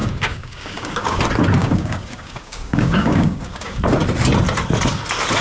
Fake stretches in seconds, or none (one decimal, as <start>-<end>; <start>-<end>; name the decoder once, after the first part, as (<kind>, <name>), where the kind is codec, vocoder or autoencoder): 0.0-1.2 (codec, DAC); 1.6-3.8